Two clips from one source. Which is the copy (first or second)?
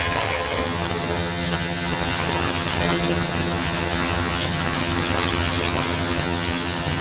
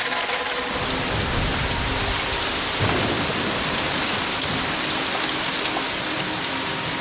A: first